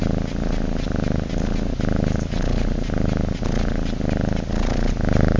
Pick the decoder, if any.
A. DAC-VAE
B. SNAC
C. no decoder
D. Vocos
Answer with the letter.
C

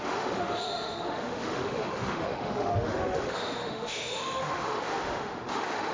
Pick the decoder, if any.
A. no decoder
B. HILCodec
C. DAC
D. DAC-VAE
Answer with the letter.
D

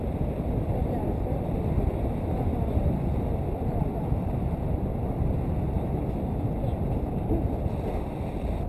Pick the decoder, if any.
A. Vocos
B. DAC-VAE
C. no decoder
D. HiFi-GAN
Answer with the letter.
C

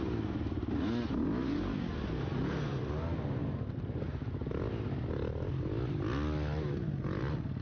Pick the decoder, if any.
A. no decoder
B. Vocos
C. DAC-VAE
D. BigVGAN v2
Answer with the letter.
A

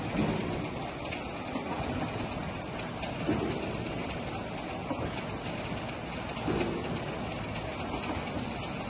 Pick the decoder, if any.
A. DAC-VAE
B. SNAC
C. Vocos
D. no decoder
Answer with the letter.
D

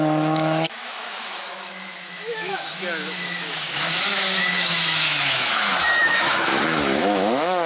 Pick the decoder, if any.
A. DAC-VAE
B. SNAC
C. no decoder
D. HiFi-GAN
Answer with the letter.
A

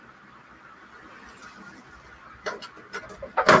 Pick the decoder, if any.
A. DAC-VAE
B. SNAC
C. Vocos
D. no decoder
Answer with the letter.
D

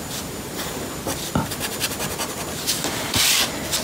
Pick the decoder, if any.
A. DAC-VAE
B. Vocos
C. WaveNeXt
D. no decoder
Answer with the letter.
D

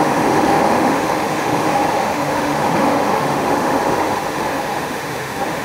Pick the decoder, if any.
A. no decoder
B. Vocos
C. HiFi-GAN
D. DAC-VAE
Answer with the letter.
D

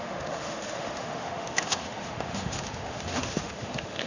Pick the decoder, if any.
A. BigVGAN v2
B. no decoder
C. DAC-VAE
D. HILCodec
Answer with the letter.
C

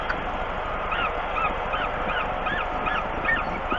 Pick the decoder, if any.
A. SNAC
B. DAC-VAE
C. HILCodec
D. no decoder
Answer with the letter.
D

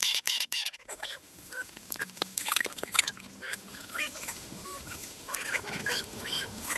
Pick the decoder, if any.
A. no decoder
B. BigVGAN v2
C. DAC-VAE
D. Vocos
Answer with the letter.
C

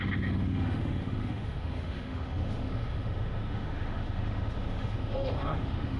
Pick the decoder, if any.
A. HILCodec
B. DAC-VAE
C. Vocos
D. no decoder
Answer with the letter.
B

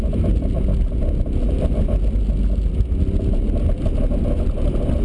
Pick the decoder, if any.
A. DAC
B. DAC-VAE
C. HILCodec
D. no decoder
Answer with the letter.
D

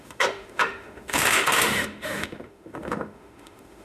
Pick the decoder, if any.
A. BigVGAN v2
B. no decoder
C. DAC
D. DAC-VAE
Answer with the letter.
D